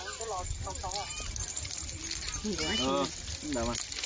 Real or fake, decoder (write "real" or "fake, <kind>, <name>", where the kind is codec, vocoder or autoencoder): real